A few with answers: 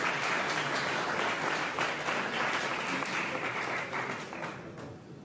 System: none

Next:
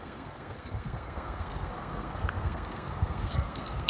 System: codec, SNAC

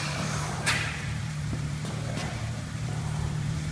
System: vocoder, BigVGAN v2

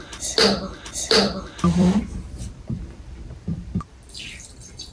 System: vocoder, BigVGAN v2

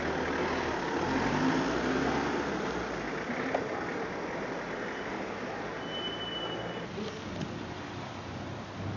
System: none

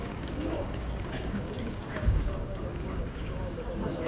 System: codec, DAC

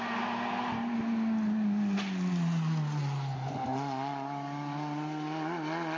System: none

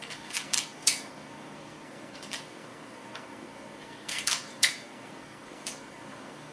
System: codec, SNAC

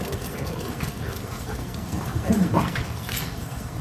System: codec, SNAC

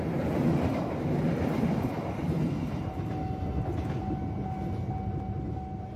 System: none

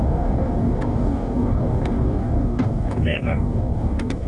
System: codec, DAC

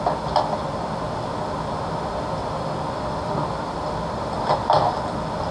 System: none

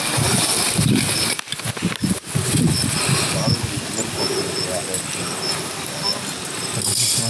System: none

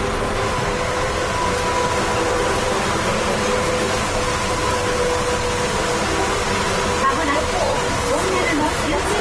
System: none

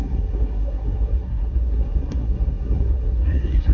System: codec, SNAC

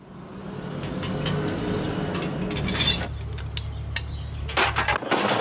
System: none